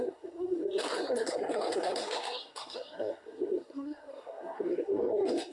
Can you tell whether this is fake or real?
fake